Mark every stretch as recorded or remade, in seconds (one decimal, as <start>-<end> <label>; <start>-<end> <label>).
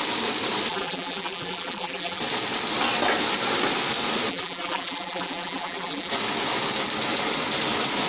0.0-0.7 recorded; 0.7-2.2 remade; 2.2-4.3 recorded; 4.3-6.1 remade; 6.1-8.1 recorded